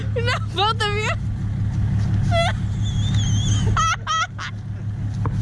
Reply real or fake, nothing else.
real